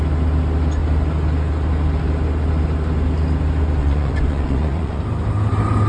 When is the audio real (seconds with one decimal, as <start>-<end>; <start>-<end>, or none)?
0.0-3.8; 5.0-5.9